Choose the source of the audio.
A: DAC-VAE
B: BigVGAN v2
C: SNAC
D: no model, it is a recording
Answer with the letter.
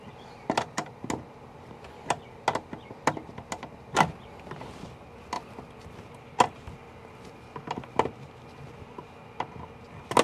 D